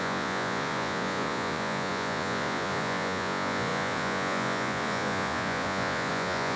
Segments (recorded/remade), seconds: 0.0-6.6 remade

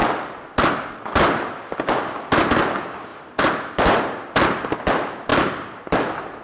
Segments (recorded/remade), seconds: 0.0-3.1 recorded; 3.1-4.0 remade; 4.0-6.4 recorded

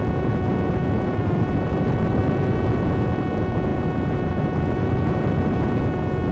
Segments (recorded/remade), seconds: 0.0-0.5 recorded; 0.5-2.2 remade; 2.2-3.7 recorded; 3.7-5.8 remade; 5.8-6.3 recorded

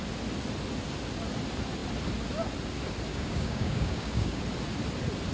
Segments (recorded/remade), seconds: 0.0-3.1 recorded; 3.1-4.4 remade; 4.4-5.3 recorded

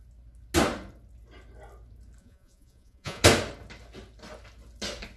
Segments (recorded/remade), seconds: 0.0-2.2 recorded; 2.2-3.2 remade; 3.2-5.2 recorded